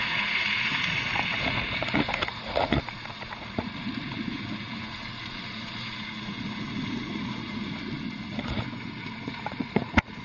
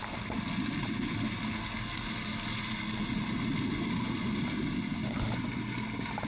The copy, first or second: first